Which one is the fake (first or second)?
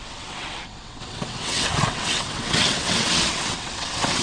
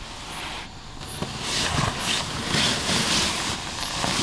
first